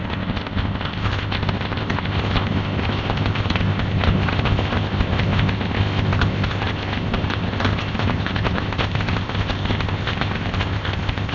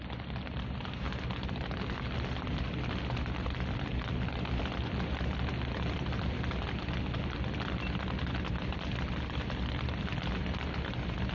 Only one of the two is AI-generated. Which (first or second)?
first